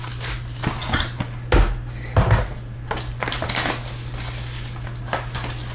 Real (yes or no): yes